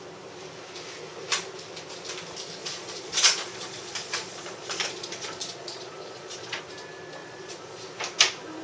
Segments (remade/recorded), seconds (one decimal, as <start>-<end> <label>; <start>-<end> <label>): 0.0-2.6 recorded; 2.6-6.6 remade; 6.6-7.2 recorded; 7.2-7.8 remade; 7.8-8.6 recorded